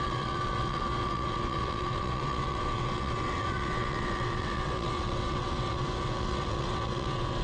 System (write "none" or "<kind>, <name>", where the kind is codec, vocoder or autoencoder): vocoder, WaveNeXt